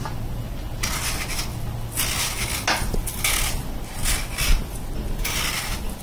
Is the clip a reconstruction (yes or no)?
no